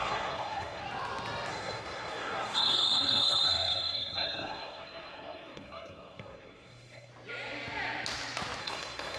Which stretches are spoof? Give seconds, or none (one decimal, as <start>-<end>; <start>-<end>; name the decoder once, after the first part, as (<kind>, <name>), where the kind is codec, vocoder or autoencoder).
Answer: 0.0-0.8 (codec, SNAC); 1.5-7.1; 8.6-9.2